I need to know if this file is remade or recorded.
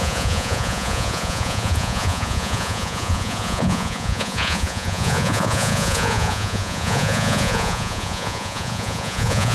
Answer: remade